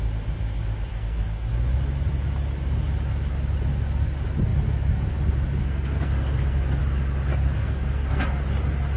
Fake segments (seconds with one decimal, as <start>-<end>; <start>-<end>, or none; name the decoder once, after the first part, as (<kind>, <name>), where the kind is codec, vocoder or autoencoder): 0.9-1.5 (codec, SNAC); 5.6-6.8; 7.3-8.2